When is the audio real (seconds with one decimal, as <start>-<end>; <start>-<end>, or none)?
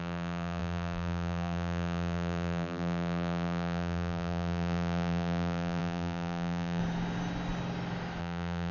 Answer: 6.8-8.2